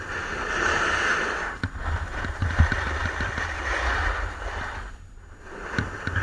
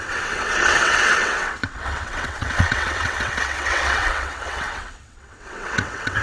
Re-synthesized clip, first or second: second